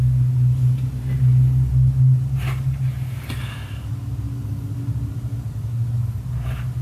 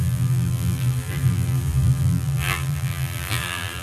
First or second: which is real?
first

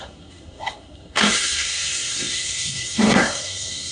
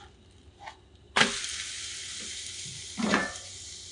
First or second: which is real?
second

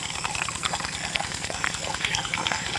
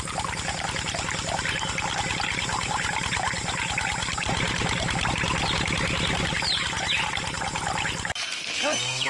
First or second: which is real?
second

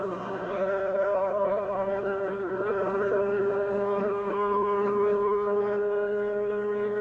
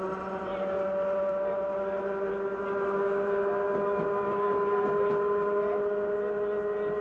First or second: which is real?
second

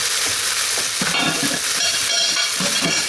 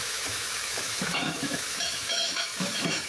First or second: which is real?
first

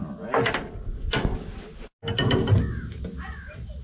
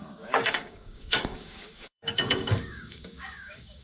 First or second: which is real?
first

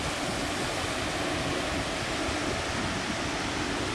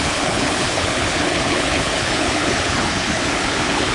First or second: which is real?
first